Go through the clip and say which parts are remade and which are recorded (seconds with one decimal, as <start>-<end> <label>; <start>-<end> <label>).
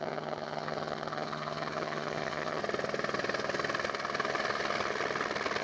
0.0-2.6 remade; 2.6-5.6 recorded